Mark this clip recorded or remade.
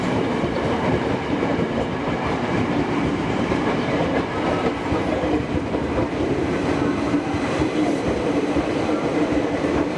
remade